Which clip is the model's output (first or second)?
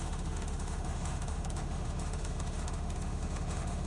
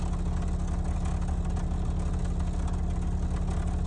first